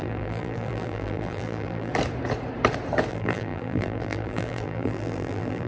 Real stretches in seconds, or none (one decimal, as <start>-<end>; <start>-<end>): 1.9-3.1